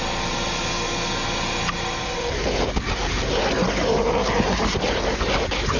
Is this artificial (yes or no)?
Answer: no